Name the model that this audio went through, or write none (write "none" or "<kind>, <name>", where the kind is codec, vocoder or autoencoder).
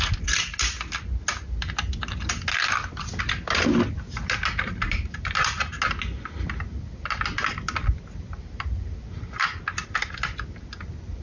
none